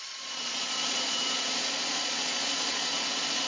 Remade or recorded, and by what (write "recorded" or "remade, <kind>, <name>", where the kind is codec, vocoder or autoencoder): remade, vocoder, Vocos